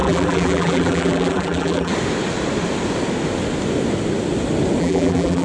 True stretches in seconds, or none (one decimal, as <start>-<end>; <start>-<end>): 1.9-4.8